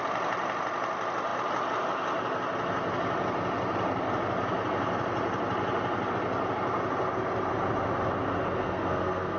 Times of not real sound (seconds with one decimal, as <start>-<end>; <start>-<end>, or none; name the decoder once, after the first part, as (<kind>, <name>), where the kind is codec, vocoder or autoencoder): 8.6-9.4 (codec, SNAC)